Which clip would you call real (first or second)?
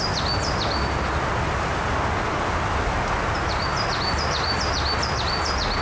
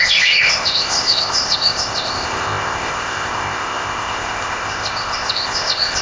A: first